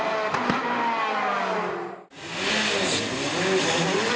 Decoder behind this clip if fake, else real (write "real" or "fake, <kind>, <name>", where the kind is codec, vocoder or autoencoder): real